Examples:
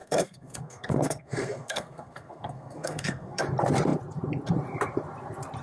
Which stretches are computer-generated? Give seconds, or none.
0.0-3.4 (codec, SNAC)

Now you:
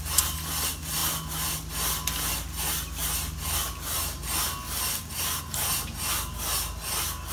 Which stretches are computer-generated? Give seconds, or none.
none

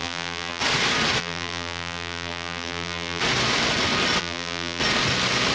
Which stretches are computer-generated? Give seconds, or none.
0.0-0.6 (vocoder, BigVGAN v2); 1.2-3.2; 4.2-4.8

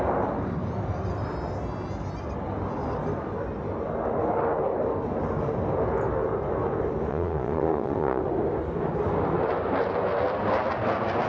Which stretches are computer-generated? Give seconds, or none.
7.1-8.2 (vocoder, Vocos)

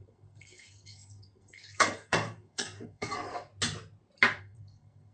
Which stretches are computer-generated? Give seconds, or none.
0.0-3.5 (codec, SNAC); 4.4-5.1

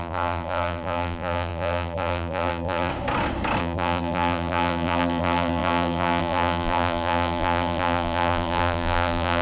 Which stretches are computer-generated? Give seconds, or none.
0.0-2.9 (vocoder, BigVGAN v2); 3.6-9.4

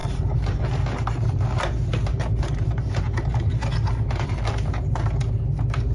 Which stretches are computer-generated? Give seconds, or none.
0.0-0.6 (vocoder, BigVGAN v2); 2.1-4.4